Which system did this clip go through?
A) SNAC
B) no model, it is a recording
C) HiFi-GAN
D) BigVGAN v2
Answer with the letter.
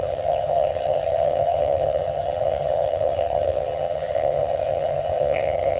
C